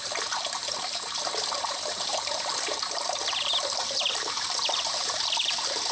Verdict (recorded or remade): remade